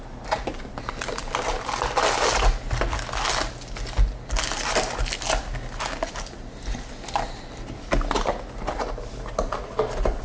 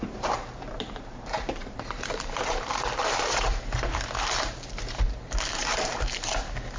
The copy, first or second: second